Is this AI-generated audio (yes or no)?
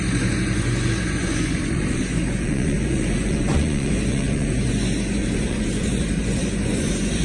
yes